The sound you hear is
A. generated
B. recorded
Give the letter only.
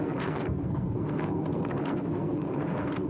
A